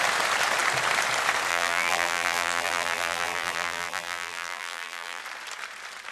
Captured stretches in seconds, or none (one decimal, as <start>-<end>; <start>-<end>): 0.0-1.5; 5.2-6.1